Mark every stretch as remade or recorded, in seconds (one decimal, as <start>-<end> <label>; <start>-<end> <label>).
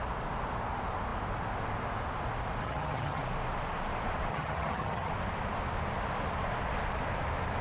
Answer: 0.0-2.6 recorded; 2.6-3.2 remade; 3.2-4.3 recorded; 4.3-5.1 remade; 5.1-7.6 recorded